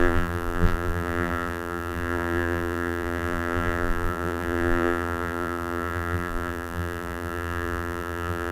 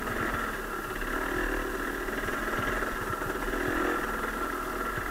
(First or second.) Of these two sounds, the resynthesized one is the first